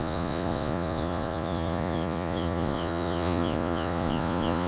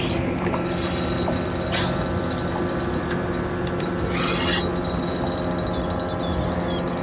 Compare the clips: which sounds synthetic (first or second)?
first